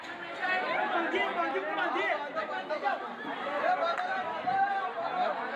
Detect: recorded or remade recorded